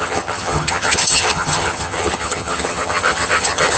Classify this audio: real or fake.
fake